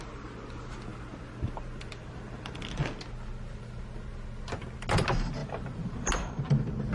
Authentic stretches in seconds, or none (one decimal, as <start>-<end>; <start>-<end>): 0.0-0.9; 2.6-5.4; 6.4-6.9